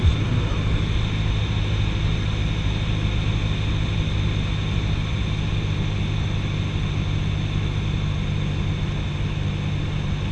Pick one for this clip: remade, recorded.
recorded